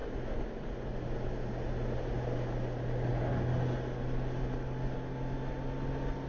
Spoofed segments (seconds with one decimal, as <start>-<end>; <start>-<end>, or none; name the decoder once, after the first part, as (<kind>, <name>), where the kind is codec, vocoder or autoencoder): none